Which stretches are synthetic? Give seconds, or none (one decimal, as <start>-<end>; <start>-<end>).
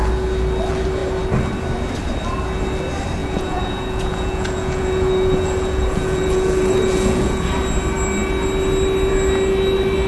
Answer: 3.2-7.5